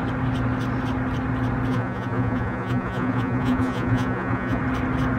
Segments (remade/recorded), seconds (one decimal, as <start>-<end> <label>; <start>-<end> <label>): 0.0-1.7 recorded; 1.7-4.6 remade; 4.6-5.2 recorded

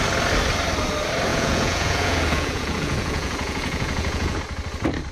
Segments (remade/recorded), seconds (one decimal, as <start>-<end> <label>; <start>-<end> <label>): 0.0-1.3 recorded; 1.3-4.4 remade; 4.4-5.1 recorded

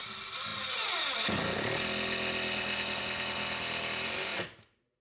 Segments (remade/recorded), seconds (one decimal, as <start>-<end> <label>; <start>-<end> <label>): 0.0-4.3 recorded; 4.3-5.0 remade

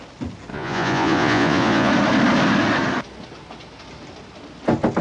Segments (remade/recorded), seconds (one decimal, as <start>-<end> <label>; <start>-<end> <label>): 0.0-0.5 recorded; 0.5-1.9 remade; 1.9-5.0 recorded

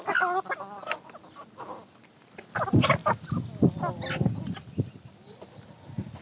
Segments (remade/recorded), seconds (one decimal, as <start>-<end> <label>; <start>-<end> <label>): 0.0-6.2 recorded

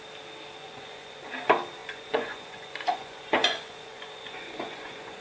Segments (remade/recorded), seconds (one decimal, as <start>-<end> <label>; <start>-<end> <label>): 0.0-0.6 recorded; 0.6-1.3 remade; 1.3-1.8 recorded; 1.8-5.2 remade

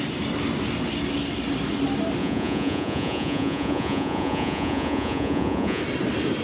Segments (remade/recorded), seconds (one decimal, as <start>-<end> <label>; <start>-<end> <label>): 0.0-2.2 recorded; 2.2-5.8 remade; 5.8-6.4 recorded

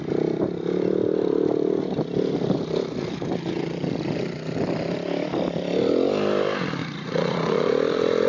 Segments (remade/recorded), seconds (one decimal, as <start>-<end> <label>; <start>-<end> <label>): 0.0-6.8 recorded; 6.8-7.7 remade; 7.7-8.3 recorded